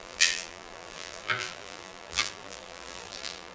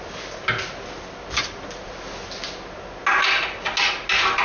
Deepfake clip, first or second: first